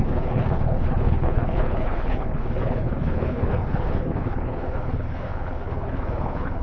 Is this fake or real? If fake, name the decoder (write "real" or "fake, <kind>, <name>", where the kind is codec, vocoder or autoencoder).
fake, codec, HILCodec